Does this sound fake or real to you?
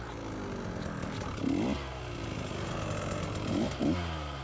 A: real